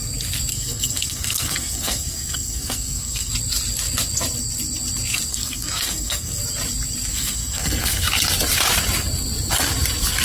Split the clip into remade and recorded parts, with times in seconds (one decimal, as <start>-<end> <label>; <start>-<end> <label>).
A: 0.0-0.5 recorded; 0.5-3.3 remade; 3.3-5.3 recorded; 5.3-6.4 remade; 6.4-7.1 recorded; 7.1-8.1 remade; 8.1-10.2 recorded